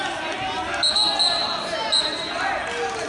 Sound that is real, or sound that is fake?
real